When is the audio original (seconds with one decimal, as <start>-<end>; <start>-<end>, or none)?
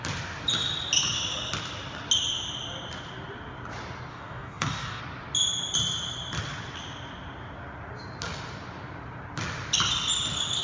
0.0-4.1; 5.0-10.6